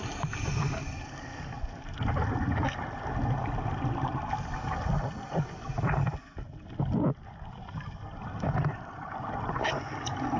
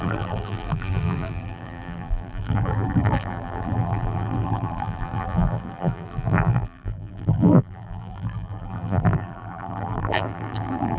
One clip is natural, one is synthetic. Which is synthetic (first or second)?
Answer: second